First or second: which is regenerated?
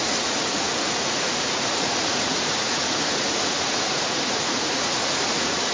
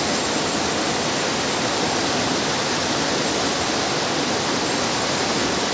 first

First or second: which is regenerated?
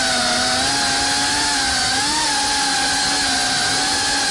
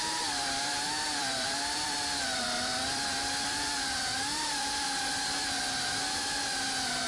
second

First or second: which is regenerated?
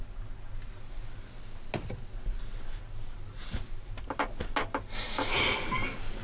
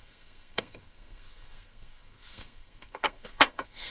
second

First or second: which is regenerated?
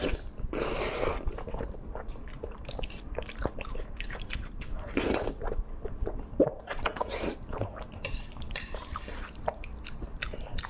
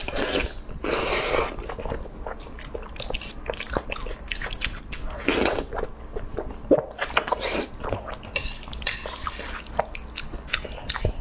first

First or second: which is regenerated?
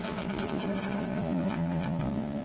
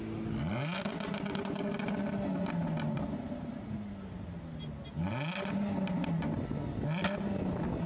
first